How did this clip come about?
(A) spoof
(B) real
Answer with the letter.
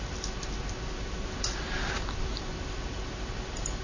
B